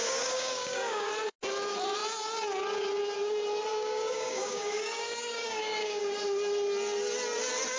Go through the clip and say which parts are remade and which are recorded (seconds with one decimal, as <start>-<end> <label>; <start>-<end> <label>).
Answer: 0.0-1.1 remade; 1.1-3.7 recorded; 3.7-6.0 remade; 6.0-7.8 recorded